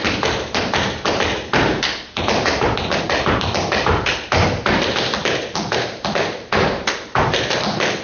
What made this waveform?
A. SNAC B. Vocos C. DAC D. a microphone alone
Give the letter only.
D